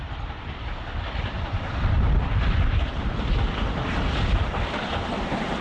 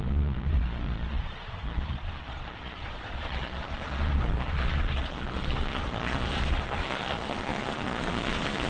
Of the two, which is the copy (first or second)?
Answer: second